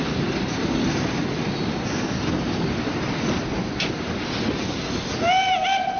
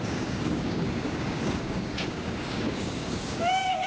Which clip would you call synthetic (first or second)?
second